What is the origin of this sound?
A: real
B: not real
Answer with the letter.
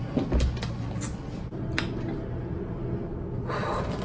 A